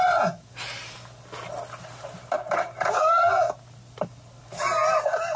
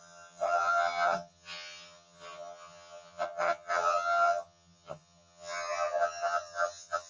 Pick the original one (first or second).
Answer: first